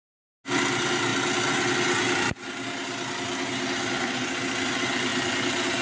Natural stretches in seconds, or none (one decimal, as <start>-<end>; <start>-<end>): 0.0-5.8